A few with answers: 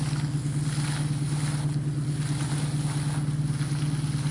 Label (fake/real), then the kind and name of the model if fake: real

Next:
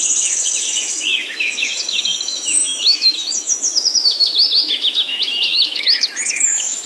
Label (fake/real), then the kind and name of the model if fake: fake, autoencoder, DAC-VAE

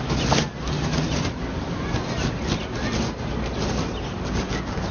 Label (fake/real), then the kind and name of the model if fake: real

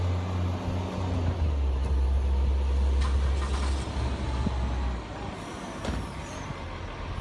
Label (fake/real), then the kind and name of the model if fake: real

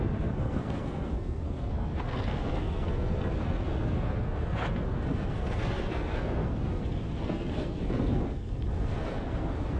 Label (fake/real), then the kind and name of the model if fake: fake, codec, SNAC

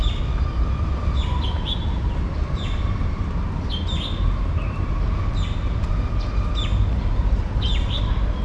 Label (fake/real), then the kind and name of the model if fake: real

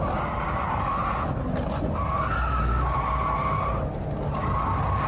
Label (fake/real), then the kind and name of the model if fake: real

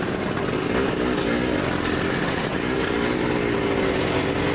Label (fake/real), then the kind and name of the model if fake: real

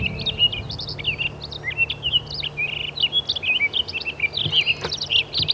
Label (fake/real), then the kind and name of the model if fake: real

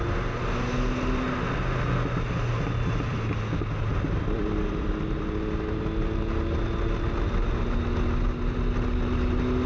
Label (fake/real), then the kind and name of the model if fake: real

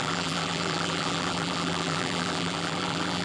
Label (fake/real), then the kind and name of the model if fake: fake, vocoder, BigVGAN v2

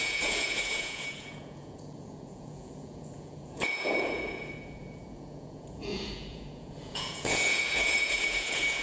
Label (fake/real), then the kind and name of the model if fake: fake, vocoder, Vocos